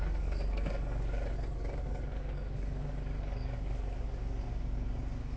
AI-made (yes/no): yes